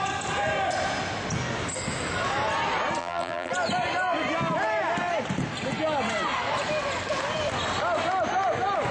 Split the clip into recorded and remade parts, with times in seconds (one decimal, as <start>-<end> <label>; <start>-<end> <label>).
0.0-3.0 recorded; 3.0-3.5 remade; 3.5-8.9 recorded